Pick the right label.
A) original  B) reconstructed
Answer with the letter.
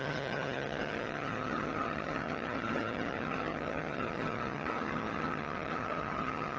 B